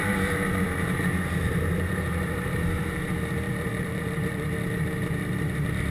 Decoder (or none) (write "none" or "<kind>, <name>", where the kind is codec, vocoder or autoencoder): vocoder, BigVGAN v2